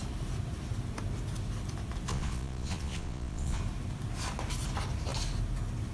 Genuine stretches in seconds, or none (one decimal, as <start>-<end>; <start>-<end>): 0.0-2.1; 3.6-5.9